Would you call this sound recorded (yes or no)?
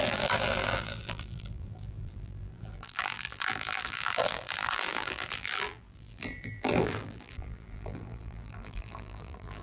no